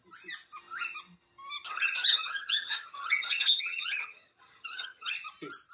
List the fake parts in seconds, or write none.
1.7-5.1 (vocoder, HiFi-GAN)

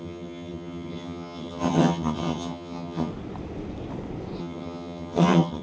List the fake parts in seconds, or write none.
0.0-3.1 (vocoder, HiFi-GAN); 4.4-5.6

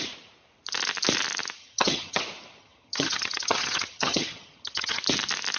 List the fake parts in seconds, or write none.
1.6-2.2 (vocoder, HiFi-GAN); 2.6-5.0

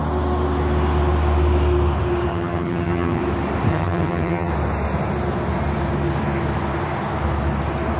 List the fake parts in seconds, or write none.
2.3-3.2 (vocoder, HiFi-GAN); 3.7-4.5

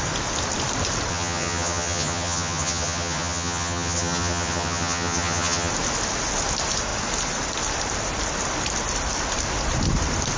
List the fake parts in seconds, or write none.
1.1-5.7 (vocoder, HiFi-GAN)

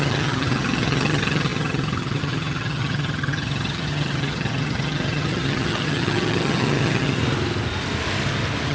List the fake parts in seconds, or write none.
0.0-7.2 (vocoder, HiFi-GAN)

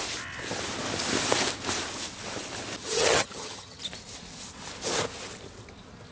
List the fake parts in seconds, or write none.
2.8-3.8 (vocoder, HiFi-GAN)

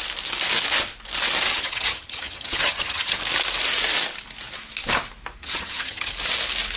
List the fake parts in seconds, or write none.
1.5-3.2 (vocoder, HiFi-GAN); 5.4-6.1